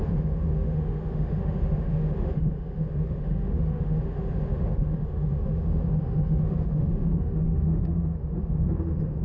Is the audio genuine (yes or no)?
no